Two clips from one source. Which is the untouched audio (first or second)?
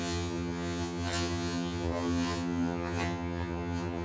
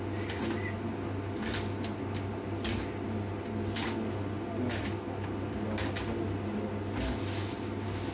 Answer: second